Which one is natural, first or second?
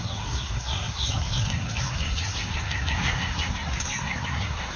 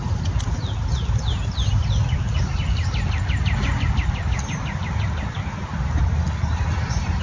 second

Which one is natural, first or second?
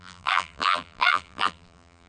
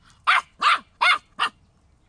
second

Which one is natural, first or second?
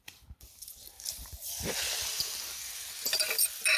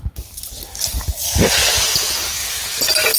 second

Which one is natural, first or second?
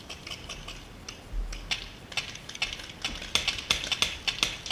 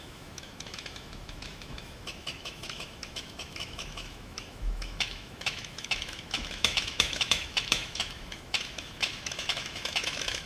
first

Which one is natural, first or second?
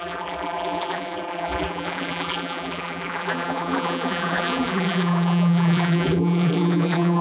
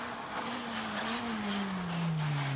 second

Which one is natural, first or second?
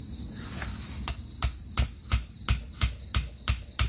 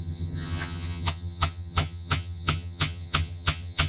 first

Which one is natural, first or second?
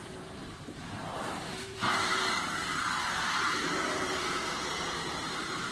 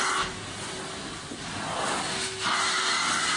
second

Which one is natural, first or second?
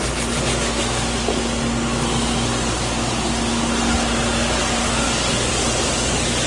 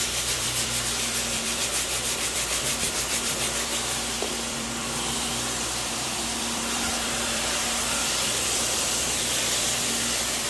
first